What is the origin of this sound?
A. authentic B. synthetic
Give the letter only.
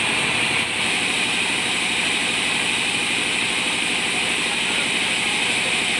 B